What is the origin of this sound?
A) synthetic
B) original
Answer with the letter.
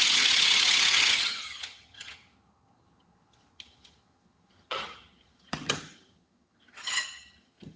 A